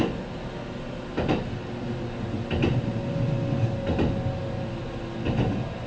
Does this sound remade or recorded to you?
recorded